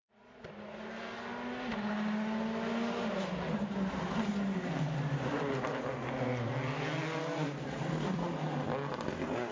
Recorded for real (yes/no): yes